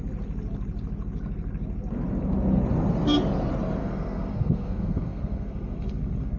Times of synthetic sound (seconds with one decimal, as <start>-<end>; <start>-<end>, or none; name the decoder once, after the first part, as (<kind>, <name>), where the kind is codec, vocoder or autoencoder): 3.8-6.4 (codec, SNAC)